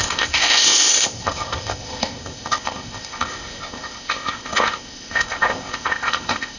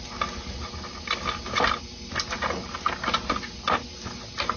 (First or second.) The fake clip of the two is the first